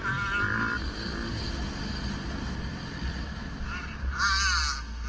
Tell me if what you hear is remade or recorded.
recorded